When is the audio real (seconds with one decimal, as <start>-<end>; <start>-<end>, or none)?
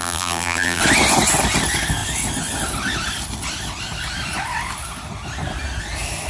0.8-6.3